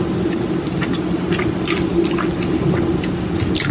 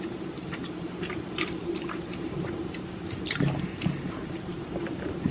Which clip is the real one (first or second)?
first